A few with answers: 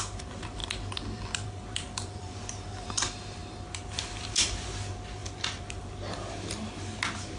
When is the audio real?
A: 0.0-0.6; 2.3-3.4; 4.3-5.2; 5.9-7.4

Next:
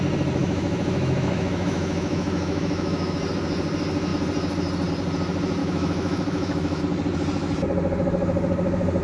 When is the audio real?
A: 0.0-0.4; 3.2-5.6; 6.8-9.0

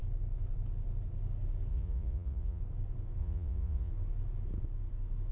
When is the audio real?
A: 0.0-1.7; 2.6-3.2; 3.9-5.3

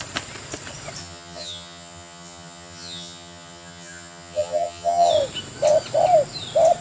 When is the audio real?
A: 0.0-1.0; 5.1-6.8